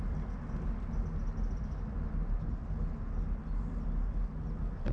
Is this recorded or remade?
recorded